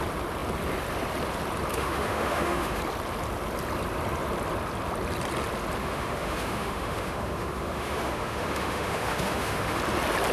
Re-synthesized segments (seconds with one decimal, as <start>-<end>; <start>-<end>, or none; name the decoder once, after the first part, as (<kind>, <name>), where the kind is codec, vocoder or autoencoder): 1.7-2.8 (autoencoder, DAC-VAE); 5.8-9.8